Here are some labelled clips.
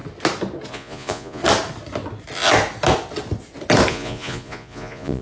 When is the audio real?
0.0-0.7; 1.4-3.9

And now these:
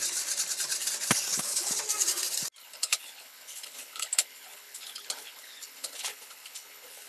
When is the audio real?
0.0-1.3; 1.8-2.6

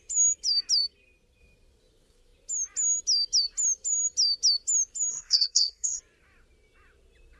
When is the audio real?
0.0-5.1; 6.0-7.4

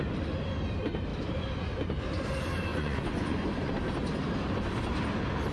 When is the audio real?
0.0-2.7; 3.7-5.5

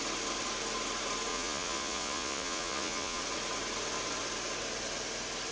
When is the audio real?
0.0-1.3; 3.2-5.5